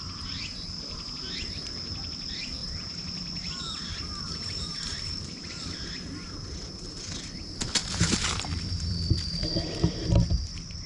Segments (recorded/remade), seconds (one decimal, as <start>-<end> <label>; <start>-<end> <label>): 0.0-2.6 recorded; 2.6-5.7 remade; 5.7-7.8 recorded; 7.8-10.1 remade; 10.1-10.9 recorded